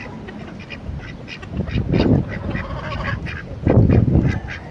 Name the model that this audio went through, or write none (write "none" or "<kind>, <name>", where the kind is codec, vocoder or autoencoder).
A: none